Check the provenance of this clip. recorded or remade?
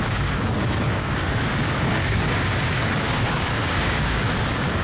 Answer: remade